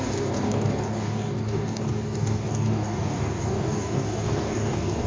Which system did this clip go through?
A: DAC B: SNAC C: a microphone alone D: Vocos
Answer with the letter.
A